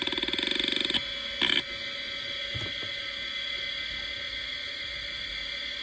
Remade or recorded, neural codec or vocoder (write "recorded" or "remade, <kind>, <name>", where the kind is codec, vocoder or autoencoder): recorded